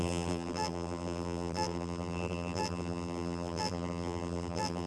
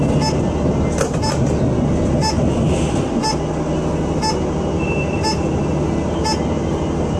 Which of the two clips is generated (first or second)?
first